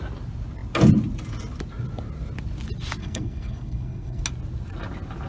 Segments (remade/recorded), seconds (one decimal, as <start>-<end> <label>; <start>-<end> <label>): 0.0-3.0 recorded; 3.0-4.2 remade; 4.2-5.3 recorded